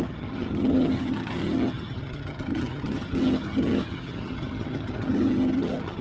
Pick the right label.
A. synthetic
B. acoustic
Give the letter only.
A